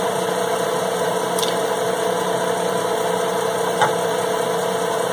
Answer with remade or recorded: remade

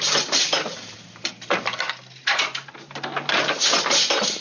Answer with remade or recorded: recorded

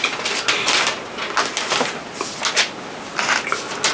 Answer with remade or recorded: recorded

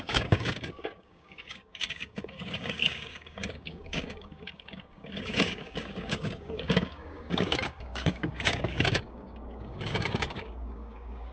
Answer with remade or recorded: remade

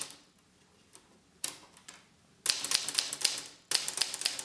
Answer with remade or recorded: recorded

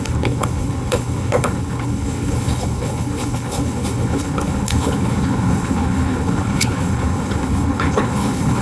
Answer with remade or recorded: remade